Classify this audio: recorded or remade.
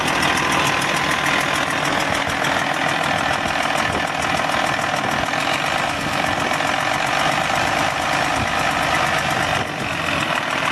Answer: recorded